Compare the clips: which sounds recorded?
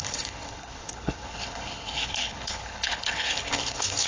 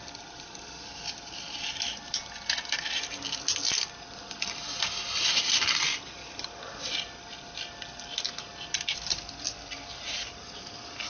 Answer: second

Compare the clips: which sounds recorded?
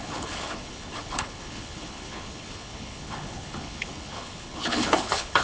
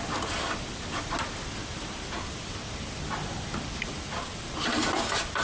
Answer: second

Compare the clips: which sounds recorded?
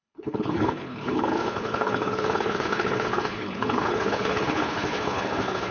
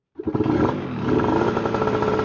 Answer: second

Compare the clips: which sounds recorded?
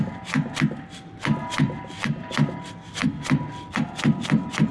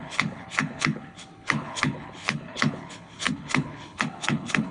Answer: first